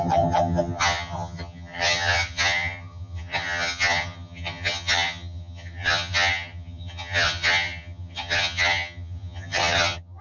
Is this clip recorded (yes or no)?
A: no